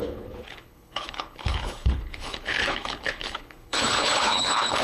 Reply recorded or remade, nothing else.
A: remade